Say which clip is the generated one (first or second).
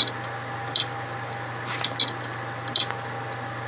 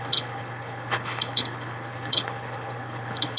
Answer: second